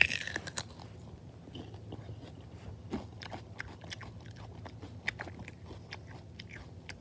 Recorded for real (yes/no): yes